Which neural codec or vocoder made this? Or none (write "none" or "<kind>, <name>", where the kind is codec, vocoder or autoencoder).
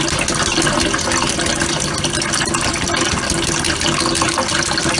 none